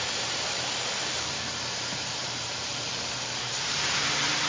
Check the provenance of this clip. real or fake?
fake